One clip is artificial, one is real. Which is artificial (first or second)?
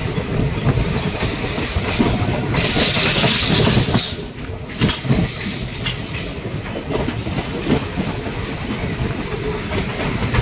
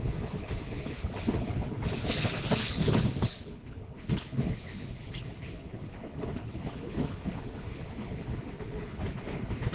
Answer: second